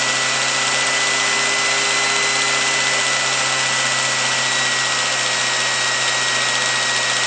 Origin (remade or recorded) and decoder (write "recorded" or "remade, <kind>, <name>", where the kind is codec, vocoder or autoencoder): recorded